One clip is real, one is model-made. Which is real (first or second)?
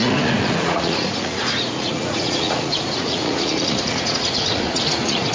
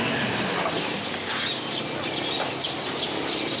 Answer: second